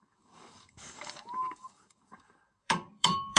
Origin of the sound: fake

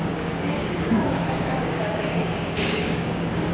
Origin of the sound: fake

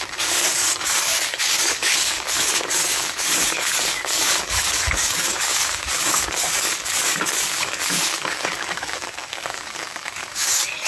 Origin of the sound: fake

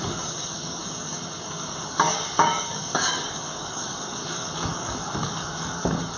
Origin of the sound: fake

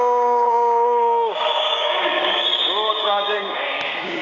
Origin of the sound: fake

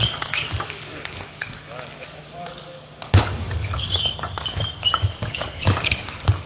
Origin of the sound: fake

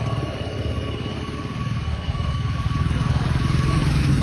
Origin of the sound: fake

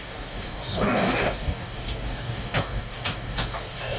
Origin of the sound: fake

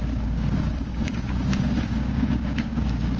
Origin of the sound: fake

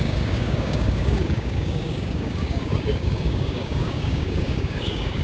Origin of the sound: fake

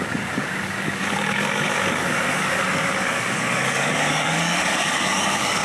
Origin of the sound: fake